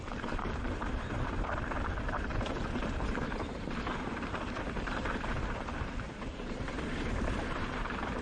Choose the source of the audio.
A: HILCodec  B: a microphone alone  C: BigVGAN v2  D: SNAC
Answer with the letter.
C